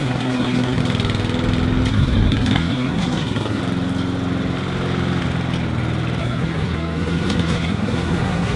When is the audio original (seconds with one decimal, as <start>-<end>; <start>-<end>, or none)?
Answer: 0.8-1.9; 3.6-6.2